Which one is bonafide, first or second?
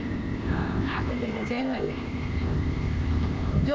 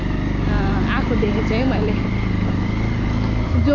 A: second